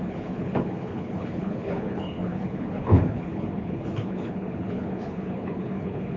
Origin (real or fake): fake